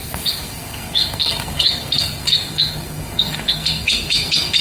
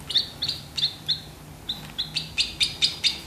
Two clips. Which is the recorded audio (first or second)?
second